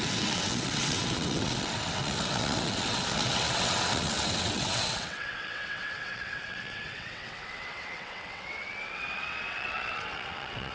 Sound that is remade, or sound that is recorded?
remade